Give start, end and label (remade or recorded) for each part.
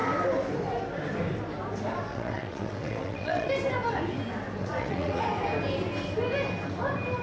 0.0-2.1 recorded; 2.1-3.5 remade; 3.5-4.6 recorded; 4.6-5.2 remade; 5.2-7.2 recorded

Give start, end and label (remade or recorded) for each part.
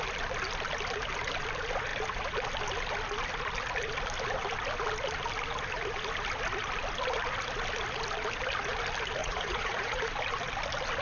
0.0-9.2 recorded; 9.2-10.1 remade; 10.1-11.0 recorded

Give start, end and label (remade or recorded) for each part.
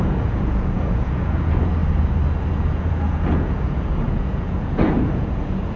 0.0-1.8 remade; 1.8-2.5 recorded; 2.5-5.8 remade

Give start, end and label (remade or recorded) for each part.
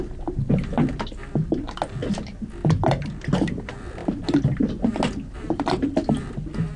0.0-6.8 recorded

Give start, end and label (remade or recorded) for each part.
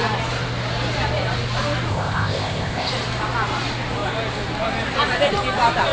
0.0-1.9 recorded; 1.9-2.9 remade; 2.9-5.9 recorded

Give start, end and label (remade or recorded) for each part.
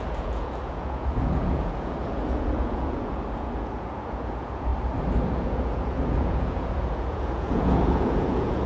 0.0-4.7 remade; 4.7-5.4 recorded; 5.4-8.7 remade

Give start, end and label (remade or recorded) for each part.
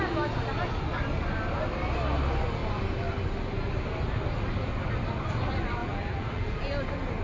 0.0-5.8 recorded; 5.8-6.6 remade; 6.6-7.2 recorded